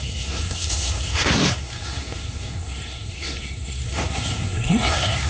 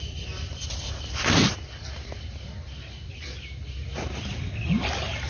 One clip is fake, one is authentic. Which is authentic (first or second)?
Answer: second